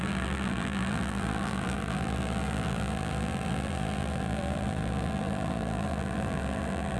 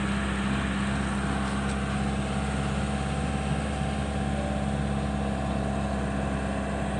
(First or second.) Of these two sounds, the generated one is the first